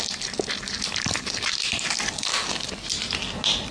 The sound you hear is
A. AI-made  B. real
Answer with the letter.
B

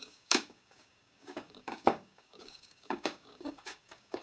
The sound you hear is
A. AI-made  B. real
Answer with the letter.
A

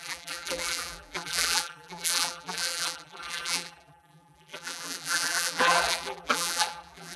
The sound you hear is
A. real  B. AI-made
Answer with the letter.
B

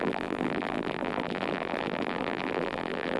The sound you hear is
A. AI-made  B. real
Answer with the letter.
A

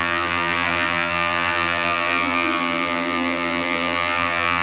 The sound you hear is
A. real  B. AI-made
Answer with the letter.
B